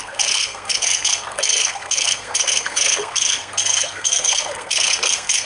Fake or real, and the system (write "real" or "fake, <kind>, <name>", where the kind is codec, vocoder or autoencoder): fake, codec, SNAC